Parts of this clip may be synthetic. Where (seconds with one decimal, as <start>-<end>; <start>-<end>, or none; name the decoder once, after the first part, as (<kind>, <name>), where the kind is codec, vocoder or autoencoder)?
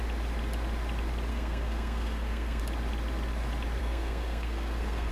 1.3-2.6 (codec, SNAC); 3.8-5.1